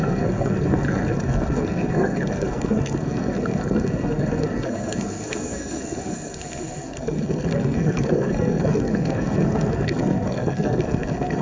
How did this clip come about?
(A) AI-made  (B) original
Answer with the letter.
A